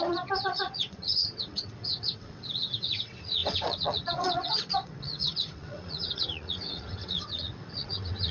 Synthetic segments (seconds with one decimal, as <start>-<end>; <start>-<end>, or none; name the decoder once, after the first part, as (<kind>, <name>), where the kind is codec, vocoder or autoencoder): 0.0-8.3 (vocoder, WaveNeXt)